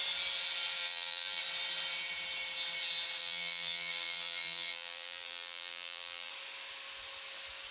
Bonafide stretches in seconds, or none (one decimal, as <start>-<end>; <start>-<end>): 0.0-0.8; 1.4-3.2; 6.3-7.7